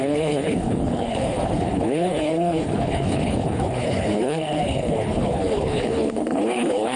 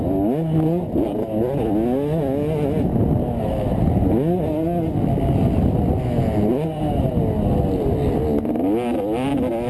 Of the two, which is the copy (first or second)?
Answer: first